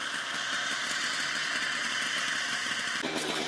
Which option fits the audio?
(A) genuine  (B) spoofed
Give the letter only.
A